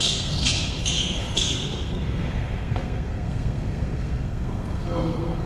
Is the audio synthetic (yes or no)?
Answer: yes